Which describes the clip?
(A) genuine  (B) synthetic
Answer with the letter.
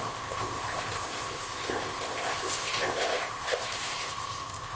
B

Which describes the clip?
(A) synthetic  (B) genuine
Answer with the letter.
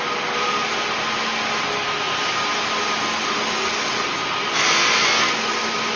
B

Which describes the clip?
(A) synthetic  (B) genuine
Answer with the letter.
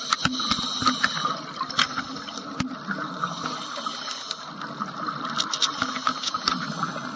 B